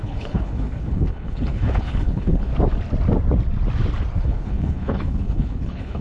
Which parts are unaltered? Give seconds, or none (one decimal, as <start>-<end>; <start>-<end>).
2.5-4.2